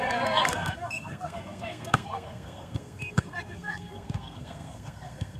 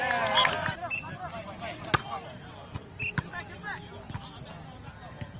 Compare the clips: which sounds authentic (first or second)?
second